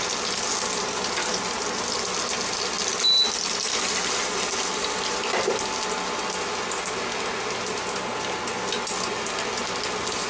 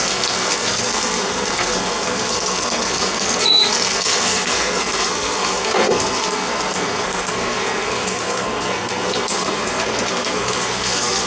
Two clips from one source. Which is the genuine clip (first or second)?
first